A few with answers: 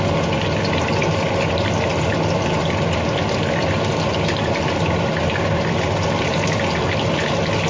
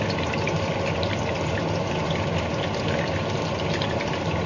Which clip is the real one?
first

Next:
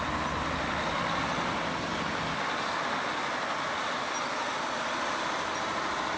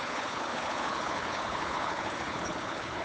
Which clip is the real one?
first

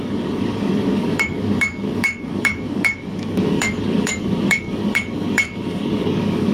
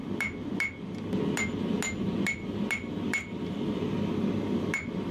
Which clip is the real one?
second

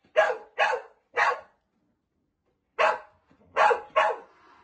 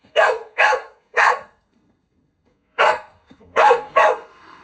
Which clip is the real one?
first